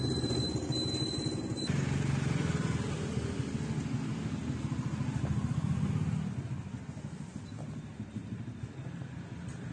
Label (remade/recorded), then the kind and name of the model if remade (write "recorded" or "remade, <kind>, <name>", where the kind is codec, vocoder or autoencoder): recorded